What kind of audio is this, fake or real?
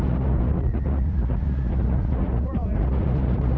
fake